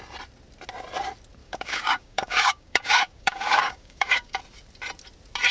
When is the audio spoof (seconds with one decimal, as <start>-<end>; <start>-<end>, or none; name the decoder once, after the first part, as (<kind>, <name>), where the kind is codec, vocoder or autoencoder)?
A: 1.4-4.4 (codec, DAC)